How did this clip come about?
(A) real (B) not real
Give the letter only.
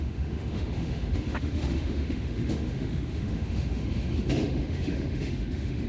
B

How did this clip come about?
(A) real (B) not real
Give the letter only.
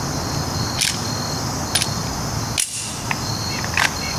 A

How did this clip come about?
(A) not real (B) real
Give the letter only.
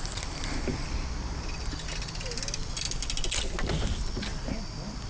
B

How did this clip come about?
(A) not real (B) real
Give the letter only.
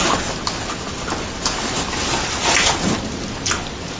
B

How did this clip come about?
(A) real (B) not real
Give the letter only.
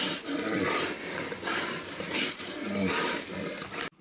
A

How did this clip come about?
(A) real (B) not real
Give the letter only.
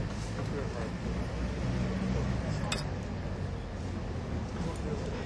A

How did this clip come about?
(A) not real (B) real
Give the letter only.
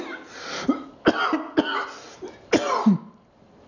B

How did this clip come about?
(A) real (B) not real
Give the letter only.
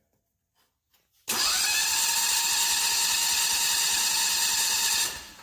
A